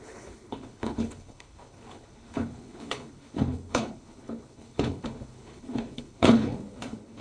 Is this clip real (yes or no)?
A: no